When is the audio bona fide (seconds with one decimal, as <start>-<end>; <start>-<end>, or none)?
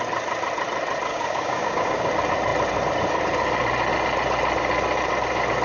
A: 0.0-1.1; 2.1-5.6